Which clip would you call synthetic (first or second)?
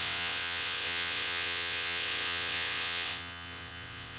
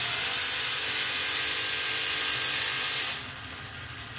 first